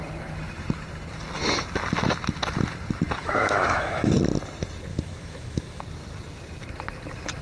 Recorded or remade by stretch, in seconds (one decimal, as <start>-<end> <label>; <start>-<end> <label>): 0.0-3.2 recorded; 3.2-4.1 remade; 4.1-4.9 recorded; 4.9-5.8 remade; 5.8-7.4 recorded